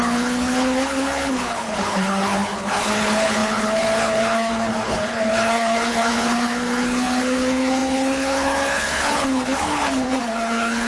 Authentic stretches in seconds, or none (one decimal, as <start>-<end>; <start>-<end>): none